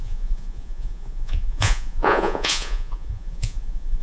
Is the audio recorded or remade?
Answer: remade